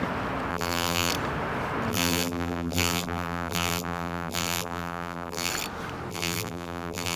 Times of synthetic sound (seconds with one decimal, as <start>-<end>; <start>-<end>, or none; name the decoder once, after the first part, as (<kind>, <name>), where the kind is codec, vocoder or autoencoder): 0.5-1.1 (vocoder, BigVGAN v2); 1.9-5.5; 6.1-7.2